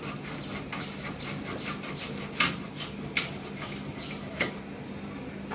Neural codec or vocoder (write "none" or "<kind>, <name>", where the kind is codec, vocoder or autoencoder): none